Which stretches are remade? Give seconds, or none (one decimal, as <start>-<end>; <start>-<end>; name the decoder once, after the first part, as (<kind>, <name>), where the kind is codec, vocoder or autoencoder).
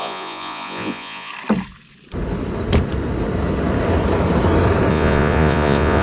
0.0-1.3 (vocoder, Vocos); 4.9-6.0